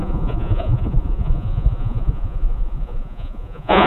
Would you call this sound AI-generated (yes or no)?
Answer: yes